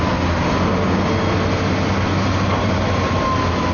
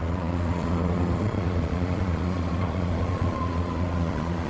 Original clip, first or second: first